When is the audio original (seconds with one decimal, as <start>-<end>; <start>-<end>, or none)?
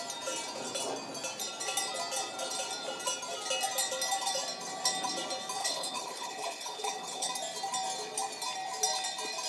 0.0-5.6; 7.3-9.5